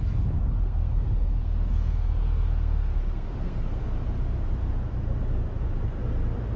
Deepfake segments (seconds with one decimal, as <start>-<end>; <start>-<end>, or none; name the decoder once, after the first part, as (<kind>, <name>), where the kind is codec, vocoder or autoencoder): 0.4-3.8 (codec, SNAC)